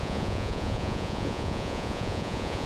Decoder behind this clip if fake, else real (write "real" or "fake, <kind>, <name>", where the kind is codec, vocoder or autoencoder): fake, vocoder, Vocos